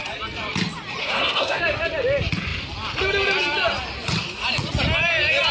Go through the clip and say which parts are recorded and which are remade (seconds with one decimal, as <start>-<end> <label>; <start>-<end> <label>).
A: 0.0-1.0 recorded; 1.0-1.6 remade; 1.6-5.5 recorded